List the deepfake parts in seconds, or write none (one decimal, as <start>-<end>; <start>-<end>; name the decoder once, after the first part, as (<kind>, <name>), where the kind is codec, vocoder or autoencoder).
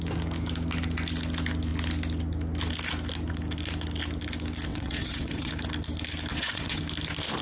4.7-5.5 (vocoder, WaveNeXt); 6.3-6.8